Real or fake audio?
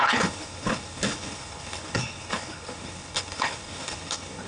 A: fake